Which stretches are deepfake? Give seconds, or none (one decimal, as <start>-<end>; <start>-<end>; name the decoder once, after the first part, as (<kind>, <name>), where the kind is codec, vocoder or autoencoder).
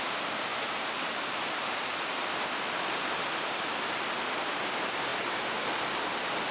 0.0-6.5 (vocoder, BigVGAN v2)